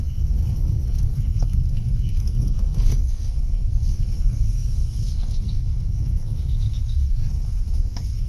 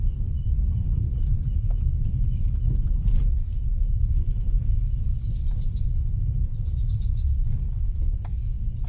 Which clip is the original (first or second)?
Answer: second